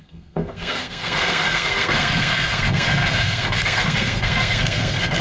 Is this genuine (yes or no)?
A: no